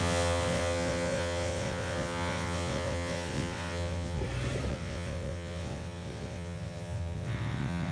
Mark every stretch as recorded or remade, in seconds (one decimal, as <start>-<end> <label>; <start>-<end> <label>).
0.0-4.2 remade; 4.2-4.7 recorded; 4.7-7.9 remade